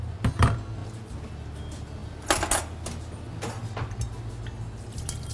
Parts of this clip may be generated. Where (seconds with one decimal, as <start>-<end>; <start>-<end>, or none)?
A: none

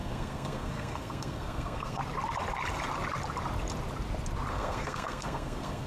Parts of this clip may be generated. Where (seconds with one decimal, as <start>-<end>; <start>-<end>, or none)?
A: 0.0-2.0; 4.5-5.9

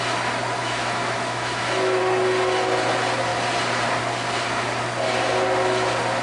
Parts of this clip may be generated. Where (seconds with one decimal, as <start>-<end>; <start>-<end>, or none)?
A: 0.6-2.0

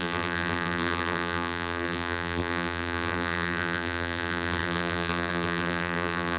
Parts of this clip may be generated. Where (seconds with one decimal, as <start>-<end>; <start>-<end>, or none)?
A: 0.0-6.4

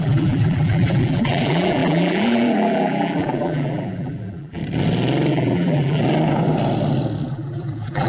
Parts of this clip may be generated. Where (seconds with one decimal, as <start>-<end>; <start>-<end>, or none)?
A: 0.0-4.6; 5.3-6.0; 7.3-8.1

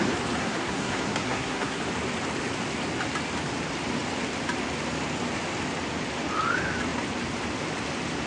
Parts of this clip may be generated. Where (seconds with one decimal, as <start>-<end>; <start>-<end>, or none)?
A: 0.4-1.8